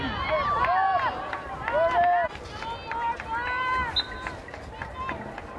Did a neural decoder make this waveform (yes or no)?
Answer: no